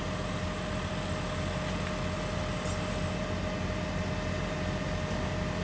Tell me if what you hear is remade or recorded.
recorded